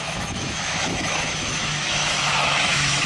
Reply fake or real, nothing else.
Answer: fake